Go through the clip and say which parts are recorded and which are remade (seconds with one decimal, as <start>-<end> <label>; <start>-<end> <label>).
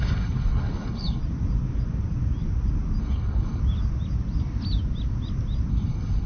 0.0-1.2 remade; 1.2-3.0 recorded; 3.0-3.6 remade; 3.6-5.7 recorded; 5.7-6.3 remade